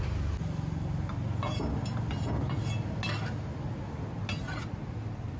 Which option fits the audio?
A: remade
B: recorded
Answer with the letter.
B